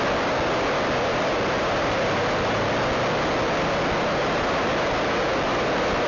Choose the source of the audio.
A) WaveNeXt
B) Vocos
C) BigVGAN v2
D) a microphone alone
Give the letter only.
D